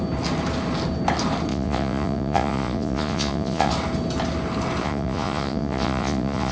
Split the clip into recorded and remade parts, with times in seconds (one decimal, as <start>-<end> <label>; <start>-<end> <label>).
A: 0.0-1.5 recorded; 1.5-3.7 remade; 3.7-4.8 recorded; 4.8-6.5 remade